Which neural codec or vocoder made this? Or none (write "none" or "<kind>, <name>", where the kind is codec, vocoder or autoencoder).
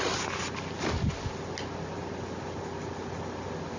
none